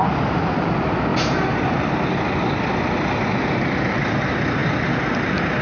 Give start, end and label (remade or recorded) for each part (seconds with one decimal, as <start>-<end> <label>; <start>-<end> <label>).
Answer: 0.0-1.1 recorded; 1.1-1.9 remade; 1.9-5.6 recorded